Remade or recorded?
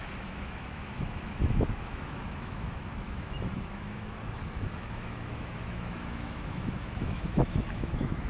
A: remade